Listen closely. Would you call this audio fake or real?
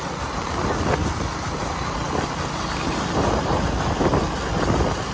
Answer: real